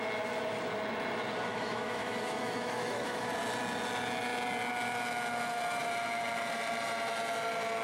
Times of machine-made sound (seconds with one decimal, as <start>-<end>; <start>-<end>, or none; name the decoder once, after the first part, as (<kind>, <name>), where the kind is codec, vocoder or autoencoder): 1.5-3.3 (autoencoder, DAC-VAE)